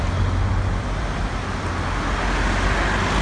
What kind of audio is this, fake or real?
real